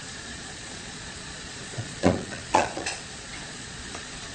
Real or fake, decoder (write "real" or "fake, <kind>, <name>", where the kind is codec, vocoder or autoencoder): fake, vocoder, Vocos